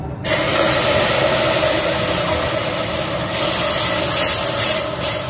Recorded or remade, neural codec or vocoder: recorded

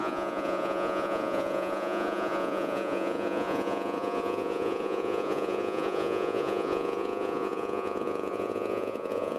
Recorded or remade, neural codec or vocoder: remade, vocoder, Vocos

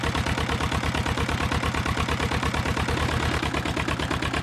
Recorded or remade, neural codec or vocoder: recorded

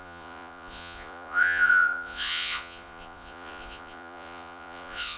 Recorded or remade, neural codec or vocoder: remade, vocoder, Vocos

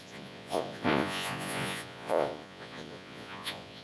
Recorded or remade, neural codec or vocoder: remade, vocoder, Vocos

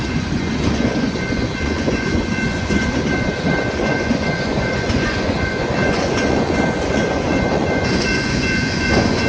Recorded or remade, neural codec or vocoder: remade, vocoder, Vocos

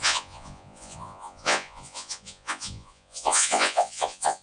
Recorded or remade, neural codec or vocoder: remade, vocoder, Vocos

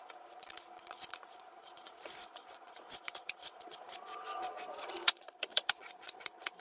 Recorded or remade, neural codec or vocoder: remade, vocoder, Vocos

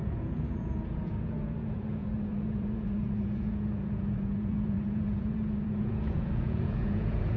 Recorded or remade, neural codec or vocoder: remade, vocoder, Vocos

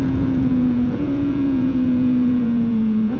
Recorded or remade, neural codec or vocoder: remade, vocoder, Vocos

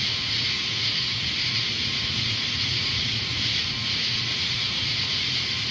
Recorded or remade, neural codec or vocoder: remade, vocoder, Vocos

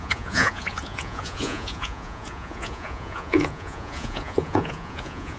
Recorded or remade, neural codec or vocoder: remade, vocoder, Vocos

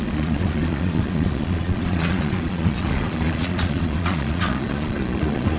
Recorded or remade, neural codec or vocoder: remade, vocoder, Vocos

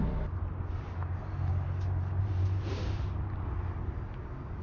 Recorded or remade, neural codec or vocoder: recorded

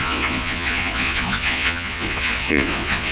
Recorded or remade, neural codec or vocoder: remade, vocoder, Vocos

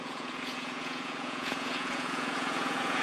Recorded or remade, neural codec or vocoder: remade, vocoder, Vocos